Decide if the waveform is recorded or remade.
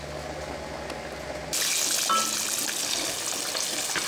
recorded